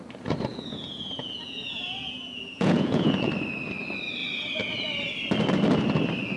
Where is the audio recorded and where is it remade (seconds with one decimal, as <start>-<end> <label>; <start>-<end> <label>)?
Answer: 0.0-0.5 recorded; 0.5-3.3 remade; 3.3-6.4 recorded